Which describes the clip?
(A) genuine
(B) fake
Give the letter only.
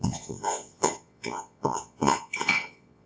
B